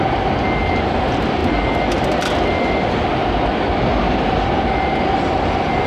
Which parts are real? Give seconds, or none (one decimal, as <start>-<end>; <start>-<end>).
0.0-5.9